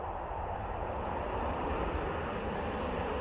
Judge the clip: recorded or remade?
recorded